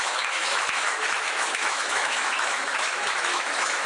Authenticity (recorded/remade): remade